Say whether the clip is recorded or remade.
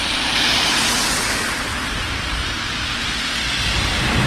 recorded